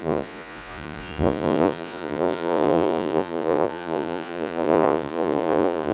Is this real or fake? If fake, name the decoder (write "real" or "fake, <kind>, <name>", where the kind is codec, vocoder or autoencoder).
fake, vocoder, Vocos